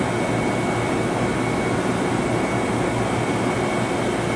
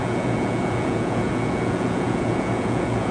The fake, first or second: second